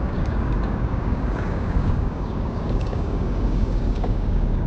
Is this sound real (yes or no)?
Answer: no